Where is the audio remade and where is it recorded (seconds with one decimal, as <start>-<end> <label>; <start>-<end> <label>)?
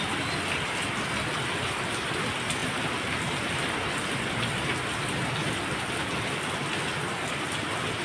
0.0-8.0 recorded